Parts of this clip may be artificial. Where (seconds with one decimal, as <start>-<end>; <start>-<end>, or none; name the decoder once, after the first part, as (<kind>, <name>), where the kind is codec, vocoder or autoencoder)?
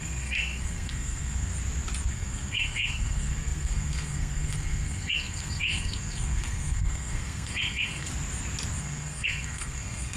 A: 0.0-1.5 (codec, SNAC); 2.1-8.1; 8.8-10.2